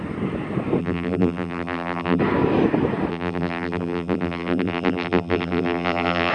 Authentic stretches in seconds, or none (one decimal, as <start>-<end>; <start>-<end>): 0.0-0.8; 2.2-3.1